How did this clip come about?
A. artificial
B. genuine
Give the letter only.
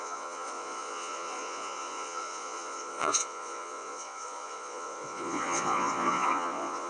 A